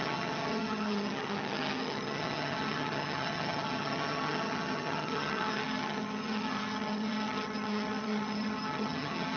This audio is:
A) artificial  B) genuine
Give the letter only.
A